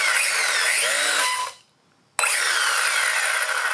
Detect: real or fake real